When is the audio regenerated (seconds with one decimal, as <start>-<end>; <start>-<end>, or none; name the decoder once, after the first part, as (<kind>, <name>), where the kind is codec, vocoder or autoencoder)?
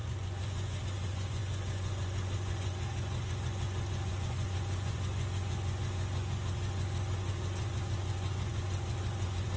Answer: 0.0-9.6 (vocoder, Vocos)